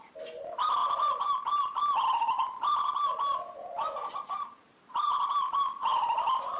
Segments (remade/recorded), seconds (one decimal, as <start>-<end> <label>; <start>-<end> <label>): 0.0-6.6 recorded